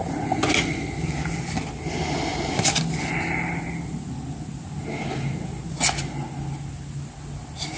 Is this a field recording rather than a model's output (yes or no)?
yes